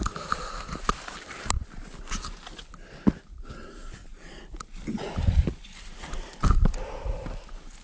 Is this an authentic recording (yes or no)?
no